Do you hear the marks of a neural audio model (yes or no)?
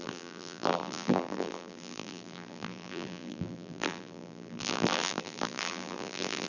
yes